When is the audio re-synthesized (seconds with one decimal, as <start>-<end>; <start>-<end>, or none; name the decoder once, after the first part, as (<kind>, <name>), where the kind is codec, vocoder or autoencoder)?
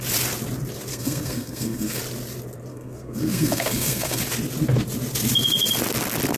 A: 0.9-2.0 (codec, SNAC); 2.7-4.2